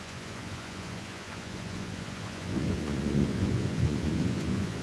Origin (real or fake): fake